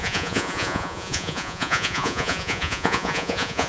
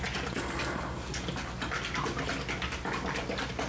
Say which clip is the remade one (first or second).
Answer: first